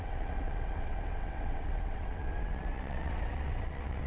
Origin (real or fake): fake